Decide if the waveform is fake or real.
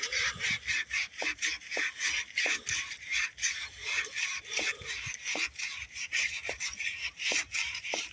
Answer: fake